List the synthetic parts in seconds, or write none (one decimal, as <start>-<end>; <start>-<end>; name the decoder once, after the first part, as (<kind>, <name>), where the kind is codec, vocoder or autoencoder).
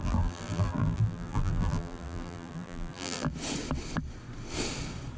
0.0-3.3 (vocoder, BigVGAN v2)